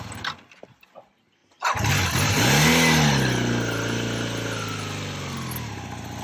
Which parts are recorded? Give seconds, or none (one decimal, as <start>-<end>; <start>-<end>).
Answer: 0.0-6.2